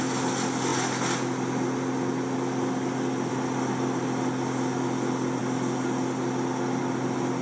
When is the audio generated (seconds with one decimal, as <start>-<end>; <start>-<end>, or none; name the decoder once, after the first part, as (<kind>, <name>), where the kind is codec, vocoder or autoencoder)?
none